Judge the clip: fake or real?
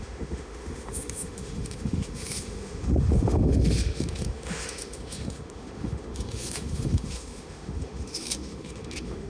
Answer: fake